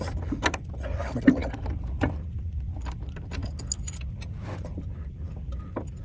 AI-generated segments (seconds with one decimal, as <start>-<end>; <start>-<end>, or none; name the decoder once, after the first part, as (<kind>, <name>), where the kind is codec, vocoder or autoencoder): none